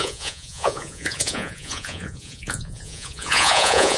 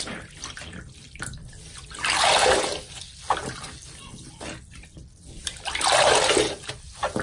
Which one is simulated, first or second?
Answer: first